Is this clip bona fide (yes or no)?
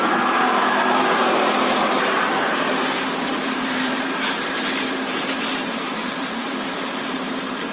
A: no